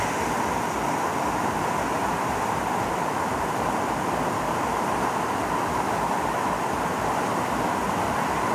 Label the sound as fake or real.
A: real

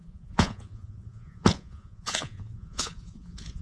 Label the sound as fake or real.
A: fake